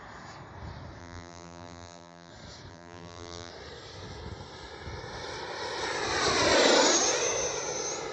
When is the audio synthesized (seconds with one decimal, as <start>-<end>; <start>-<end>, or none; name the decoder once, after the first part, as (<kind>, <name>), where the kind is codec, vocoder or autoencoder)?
1.0-2.3 (vocoder, BigVGAN v2); 2.7-3.5